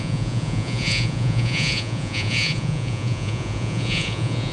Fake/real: fake